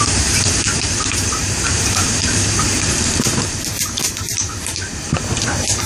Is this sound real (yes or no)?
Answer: no